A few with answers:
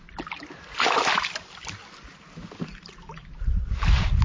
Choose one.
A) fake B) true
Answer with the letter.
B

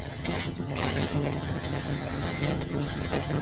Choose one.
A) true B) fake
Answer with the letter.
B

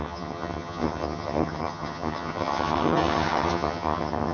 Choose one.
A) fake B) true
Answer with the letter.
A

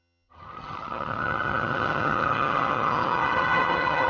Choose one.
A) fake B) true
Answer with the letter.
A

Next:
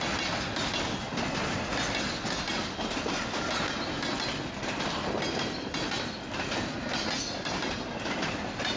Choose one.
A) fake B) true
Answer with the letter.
B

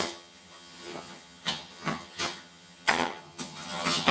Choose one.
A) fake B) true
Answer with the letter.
A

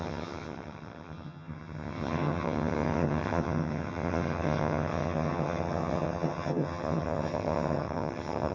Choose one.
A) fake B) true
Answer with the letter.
A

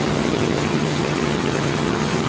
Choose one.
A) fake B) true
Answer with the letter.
A